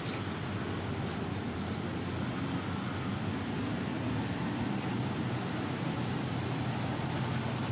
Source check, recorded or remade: recorded